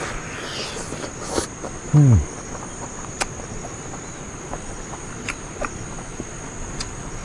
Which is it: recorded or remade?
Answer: recorded